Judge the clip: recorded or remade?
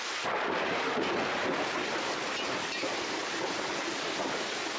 recorded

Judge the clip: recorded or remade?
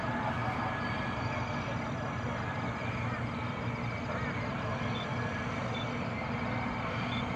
recorded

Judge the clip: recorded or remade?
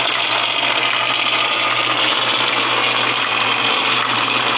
recorded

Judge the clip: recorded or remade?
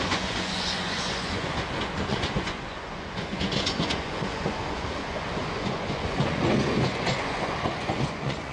remade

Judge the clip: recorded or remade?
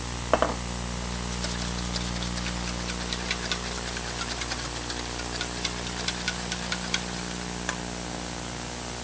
recorded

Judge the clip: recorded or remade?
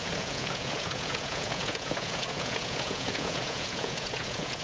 remade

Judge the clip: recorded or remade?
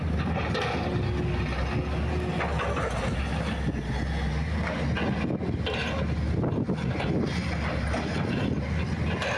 recorded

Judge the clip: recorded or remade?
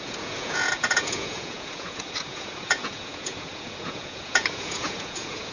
remade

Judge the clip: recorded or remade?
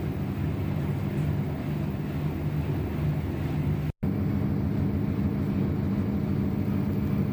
recorded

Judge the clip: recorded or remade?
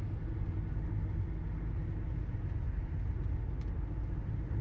recorded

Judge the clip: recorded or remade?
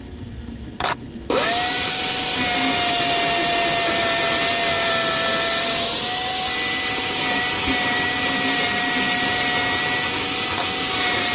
recorded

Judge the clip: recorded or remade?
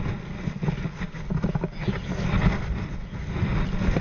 recorded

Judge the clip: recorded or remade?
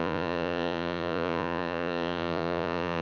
remade